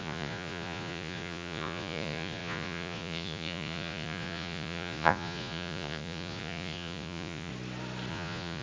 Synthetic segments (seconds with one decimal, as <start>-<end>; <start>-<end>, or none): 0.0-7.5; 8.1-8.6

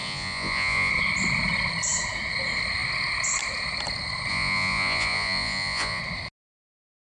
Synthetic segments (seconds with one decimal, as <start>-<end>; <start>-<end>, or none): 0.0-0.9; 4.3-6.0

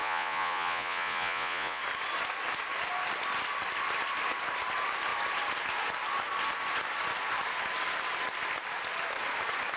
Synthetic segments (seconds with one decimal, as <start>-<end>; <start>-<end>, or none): 0.0-1.8

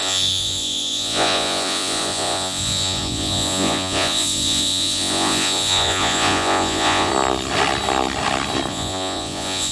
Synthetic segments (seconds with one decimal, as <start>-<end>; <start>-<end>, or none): 0.0-7.1; 8.7-9.7

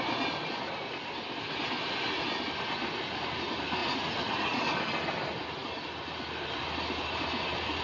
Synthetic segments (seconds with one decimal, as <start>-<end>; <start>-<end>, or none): 3.8-4.6

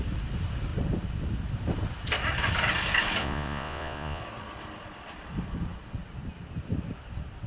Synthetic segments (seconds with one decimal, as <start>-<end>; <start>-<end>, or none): 3.2-4.2